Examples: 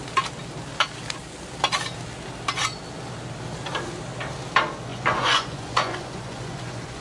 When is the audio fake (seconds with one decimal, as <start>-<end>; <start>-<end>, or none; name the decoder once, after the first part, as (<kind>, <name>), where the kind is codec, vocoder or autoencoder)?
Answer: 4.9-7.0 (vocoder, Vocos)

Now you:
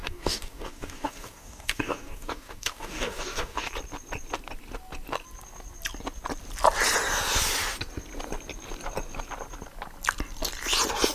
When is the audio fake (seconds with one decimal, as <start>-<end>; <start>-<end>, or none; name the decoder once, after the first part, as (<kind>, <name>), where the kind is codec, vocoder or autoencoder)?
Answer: 0.0-3.7 (codec, DAC)

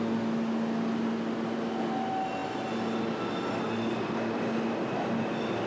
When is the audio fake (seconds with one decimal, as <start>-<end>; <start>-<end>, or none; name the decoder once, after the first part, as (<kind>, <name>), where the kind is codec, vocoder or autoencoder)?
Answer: none